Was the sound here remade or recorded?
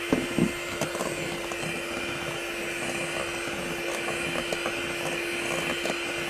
recorded